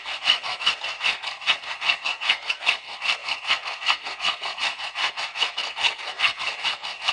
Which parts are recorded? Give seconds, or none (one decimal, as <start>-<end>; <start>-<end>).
none